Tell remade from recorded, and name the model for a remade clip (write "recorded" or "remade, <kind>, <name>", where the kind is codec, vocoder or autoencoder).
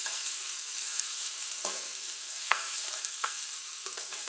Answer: remade, codec, SNAC